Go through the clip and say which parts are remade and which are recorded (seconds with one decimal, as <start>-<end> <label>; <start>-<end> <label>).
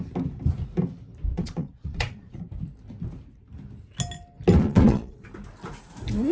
0.0-1.3 recorded; 1.3-2.4 remade; 2.4-4.5 recorded; 4.5-5.3 remade; 5.3-6.3 recorded